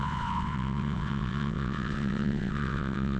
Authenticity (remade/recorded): remade